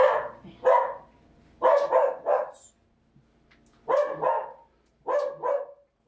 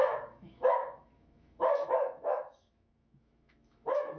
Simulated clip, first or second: second